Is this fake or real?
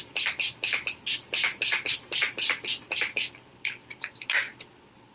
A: real